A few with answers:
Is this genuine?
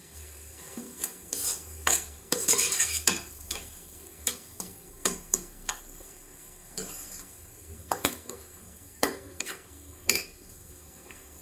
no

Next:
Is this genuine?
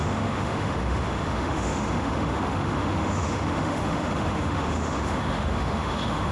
no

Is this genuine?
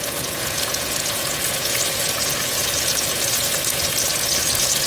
no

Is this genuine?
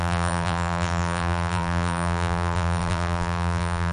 no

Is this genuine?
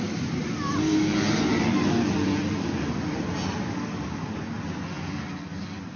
yes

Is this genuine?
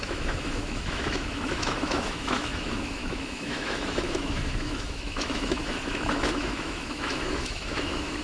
no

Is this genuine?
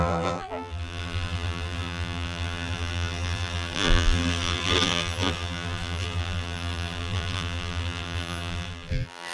no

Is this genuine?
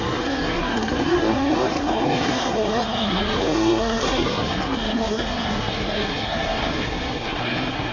no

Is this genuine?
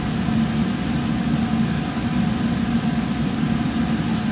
yes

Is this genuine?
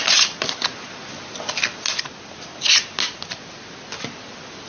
yes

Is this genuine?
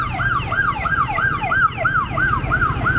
yes